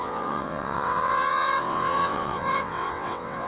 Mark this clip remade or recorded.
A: remade